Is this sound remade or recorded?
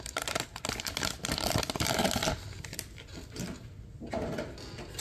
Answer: recorded